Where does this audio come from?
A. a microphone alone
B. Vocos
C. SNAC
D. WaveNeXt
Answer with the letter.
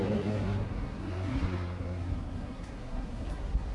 C